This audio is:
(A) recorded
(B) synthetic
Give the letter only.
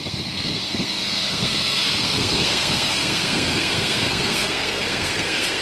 B